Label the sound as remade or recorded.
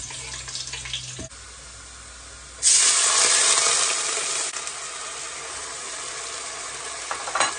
recorded